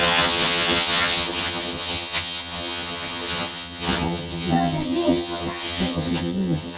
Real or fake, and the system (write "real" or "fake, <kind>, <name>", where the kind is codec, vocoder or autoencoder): fake, vocoder, HiFi-GAN